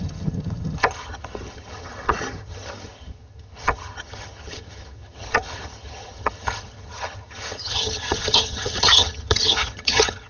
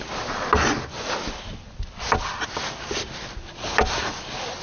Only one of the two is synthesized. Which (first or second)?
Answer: first